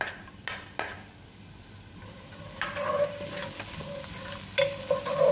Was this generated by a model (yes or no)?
no